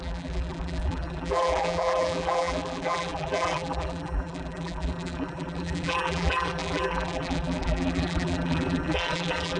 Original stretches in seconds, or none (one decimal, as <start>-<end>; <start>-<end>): none